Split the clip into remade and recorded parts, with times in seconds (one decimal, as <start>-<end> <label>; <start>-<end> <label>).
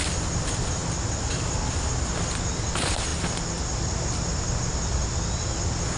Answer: 0.0-6.0 recorded